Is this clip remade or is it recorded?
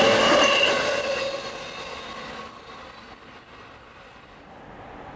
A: recorded